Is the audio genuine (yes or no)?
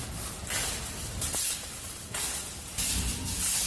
yes